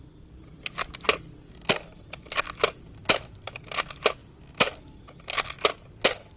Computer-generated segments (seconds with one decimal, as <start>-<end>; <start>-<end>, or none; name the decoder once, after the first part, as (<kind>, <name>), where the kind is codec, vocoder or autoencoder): none